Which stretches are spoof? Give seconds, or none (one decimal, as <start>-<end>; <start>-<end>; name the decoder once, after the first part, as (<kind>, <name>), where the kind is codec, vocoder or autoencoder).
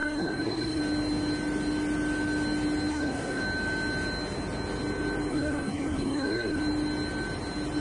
0.0-0.8 (codec, SNAC); 2.9-3.4; 5.3-6.6